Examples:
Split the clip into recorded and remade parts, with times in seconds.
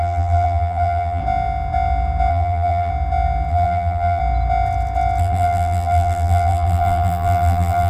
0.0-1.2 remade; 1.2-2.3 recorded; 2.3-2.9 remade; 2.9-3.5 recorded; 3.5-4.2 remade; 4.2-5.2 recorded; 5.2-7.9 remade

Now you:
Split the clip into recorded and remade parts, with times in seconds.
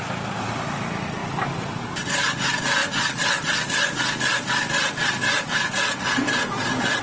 0.0-2.8 recorded; 2.8-7.0 remade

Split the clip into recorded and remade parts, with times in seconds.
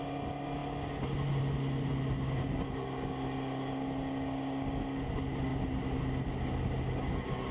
0.0-7.5 recorded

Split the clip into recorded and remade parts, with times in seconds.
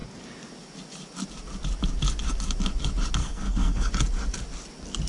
0.0-3.2 recorded; 3.2-3.9 remade; 3.9-5.1 recorded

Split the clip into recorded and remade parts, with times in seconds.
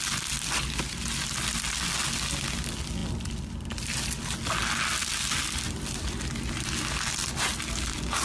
0.0-8.2 recorded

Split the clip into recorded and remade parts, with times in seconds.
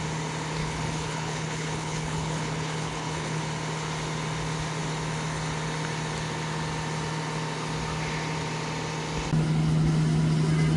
0.0-0.6 recorded; 0.6-3.4 remade; 3.4-10.8 recorded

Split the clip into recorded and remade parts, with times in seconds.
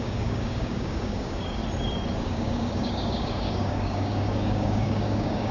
0.0-1.6 remade; 1.6-2.2 recorded; 2.2-5.5 remade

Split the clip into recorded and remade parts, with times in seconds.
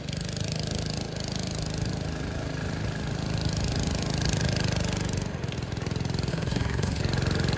0.0-6.3 recorded; 6.3-7.0 remade; 7.0-7.6 recorded